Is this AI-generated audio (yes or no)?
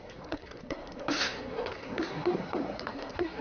yes